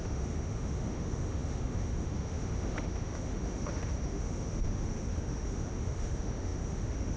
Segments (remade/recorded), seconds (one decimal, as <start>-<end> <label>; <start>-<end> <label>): 0.0-7.2 remade